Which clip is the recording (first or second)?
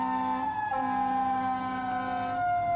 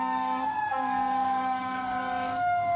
first